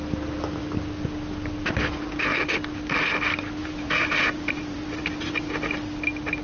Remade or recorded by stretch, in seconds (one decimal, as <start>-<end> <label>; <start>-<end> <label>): 0.0-3.6 recorded; 3.6-5.0 remade; 5.0-6.4 recorded